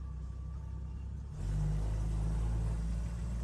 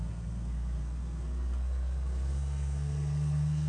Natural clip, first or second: first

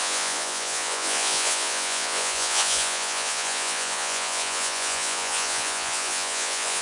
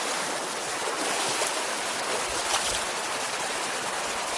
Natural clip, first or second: second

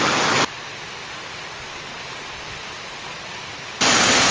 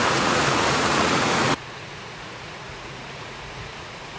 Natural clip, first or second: first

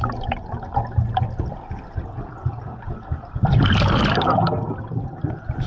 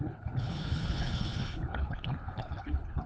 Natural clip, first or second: first